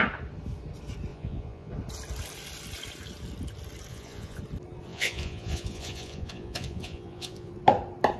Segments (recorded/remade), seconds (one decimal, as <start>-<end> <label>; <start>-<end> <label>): 0.0-1.1 recorded; 1.1-1.7 remade; 1.7-3.9 recorded; 3.9-4.4 remade; 4.4-4.9 recorded; 4.9-7.5 remade; 7.5-8.2 recorded

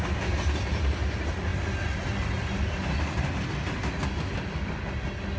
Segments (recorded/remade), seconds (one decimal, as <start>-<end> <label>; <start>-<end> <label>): 0.0-5.4 recorded